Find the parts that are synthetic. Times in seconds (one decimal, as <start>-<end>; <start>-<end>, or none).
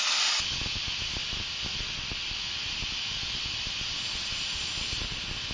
none